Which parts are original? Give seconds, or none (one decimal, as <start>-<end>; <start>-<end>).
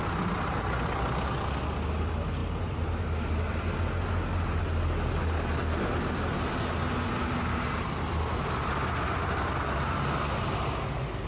0.0-11.3